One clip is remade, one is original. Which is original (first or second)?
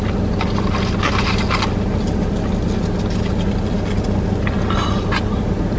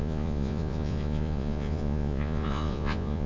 first